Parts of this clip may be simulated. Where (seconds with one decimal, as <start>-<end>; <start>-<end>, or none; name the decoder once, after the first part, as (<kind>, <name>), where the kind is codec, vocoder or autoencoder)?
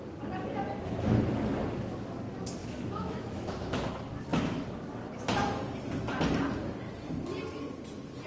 2.6-3.9 (autoencoder, DAC-VAE)